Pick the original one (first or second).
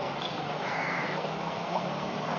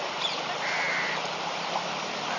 second